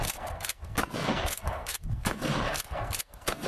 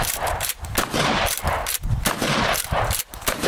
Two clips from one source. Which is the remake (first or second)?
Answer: first